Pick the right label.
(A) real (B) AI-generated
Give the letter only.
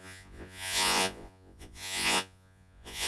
B